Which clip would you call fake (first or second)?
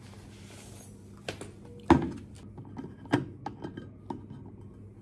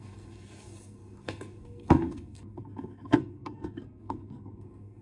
second